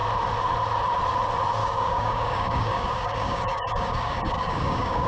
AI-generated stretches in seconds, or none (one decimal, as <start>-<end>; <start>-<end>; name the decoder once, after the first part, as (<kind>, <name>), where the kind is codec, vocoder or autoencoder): 1.6-5.1 (codec, DAC)